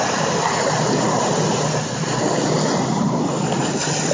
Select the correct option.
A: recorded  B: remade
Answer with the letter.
A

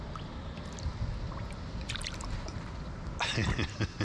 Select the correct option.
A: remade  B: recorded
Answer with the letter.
B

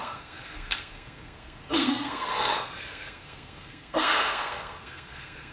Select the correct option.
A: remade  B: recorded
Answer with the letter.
A